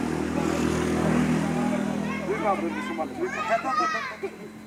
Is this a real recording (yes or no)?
yes